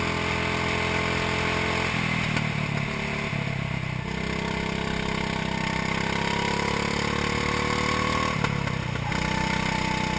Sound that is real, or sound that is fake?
real